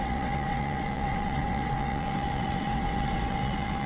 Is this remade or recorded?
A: remade